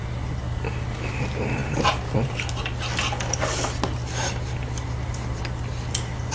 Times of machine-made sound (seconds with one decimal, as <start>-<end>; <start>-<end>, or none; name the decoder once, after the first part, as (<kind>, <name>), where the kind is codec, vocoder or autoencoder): none